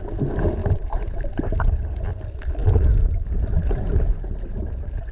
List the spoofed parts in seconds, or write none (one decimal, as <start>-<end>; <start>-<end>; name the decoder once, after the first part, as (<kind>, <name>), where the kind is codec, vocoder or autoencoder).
0.6-1.4 (vocoder, BigVGAN v2); 2.6-4.0

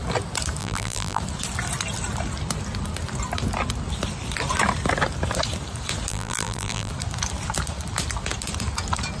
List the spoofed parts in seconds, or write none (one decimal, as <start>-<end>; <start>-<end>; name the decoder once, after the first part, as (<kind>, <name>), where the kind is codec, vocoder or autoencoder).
0.6-1.2 (vocoder, BigVGAN v2); 6.1-6.9

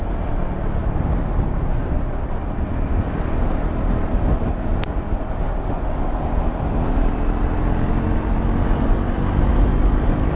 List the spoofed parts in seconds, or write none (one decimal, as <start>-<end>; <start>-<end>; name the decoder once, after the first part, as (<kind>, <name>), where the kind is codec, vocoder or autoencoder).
0.8-2.1 (vocoder, BigVGAN v2)

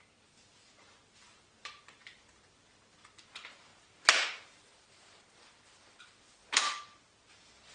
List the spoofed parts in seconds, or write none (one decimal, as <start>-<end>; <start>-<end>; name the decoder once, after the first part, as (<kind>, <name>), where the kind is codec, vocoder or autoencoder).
0.0-6.4 (vocoder, BigVGAN v2); 7.0-7.7

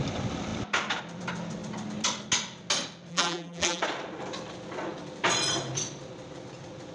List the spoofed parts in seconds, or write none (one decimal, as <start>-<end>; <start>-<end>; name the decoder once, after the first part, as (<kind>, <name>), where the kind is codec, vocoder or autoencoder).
3.1-3.8 (vocoder, BigVGAN v2)

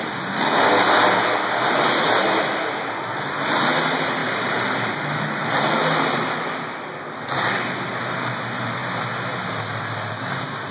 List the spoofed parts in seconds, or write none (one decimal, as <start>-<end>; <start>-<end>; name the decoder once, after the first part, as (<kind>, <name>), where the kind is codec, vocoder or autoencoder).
4.2-4.9 (vocoder, BigVGAN v2); 5.4-6.0

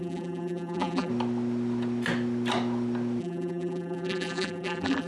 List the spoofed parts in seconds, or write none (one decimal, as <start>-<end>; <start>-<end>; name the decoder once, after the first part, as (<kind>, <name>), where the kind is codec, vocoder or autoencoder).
0.0-1.1 (vocoder, BigVGAN v2); 3.2-5.1

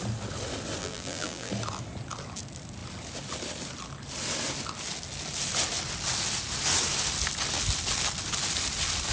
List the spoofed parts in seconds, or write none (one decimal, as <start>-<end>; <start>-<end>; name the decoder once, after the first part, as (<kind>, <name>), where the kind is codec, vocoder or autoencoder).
0.8-1.5 (vocoder, BigVGAN v2)